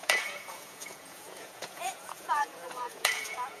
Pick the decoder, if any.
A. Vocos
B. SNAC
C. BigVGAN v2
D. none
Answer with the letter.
A